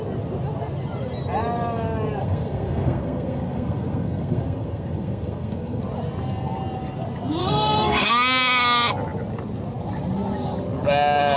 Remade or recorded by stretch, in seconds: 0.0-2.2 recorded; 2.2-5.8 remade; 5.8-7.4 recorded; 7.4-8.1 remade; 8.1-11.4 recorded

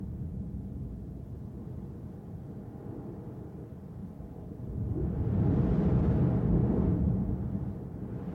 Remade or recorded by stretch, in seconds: 0.0-4.0 recorded; 4.0-5.0 remade; 5.0-6.6 recorded; 6.6-7.3 remade; 7.3-8.3 recorded

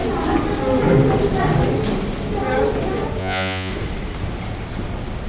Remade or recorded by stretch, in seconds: 0.0-3.2 recorded; 3.2-3.7 remade; 3.7-5.3 recorded